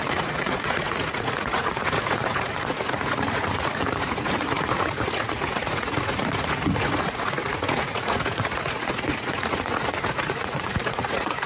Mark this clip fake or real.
fake